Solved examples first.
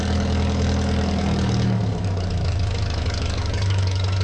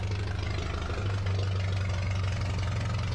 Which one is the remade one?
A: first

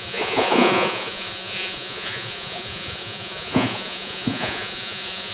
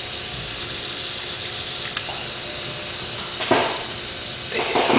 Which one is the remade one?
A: first